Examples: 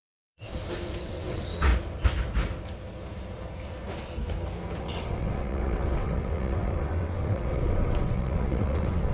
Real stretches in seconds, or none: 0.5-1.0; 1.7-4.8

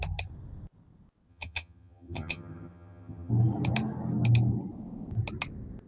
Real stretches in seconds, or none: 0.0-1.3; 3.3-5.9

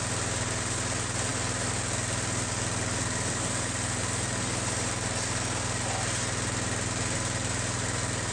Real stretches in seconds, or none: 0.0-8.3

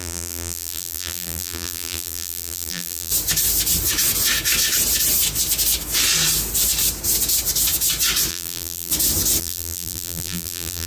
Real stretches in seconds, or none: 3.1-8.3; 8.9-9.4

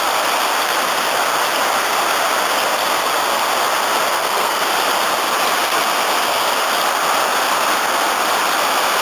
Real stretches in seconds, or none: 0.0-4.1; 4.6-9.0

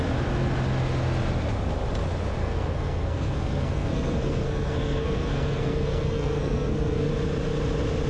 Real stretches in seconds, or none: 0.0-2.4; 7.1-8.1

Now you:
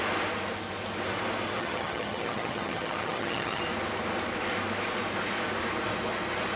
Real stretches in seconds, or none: 0.0-1.6; 3.6-6.6

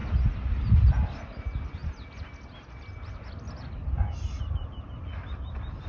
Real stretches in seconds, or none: 0.0-5.9